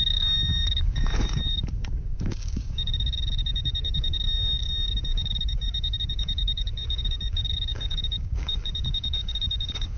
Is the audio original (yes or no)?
no